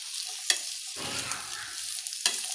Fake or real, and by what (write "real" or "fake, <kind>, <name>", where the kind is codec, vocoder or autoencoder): real